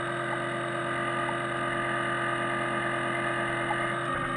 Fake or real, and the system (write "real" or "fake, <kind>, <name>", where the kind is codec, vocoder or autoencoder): real